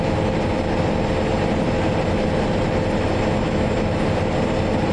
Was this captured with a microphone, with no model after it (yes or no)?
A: yes